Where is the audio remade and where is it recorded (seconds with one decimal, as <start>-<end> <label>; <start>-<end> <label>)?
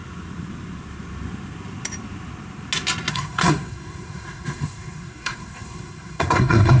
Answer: 0.0-3.1 recorded; 3.1-6.8 remade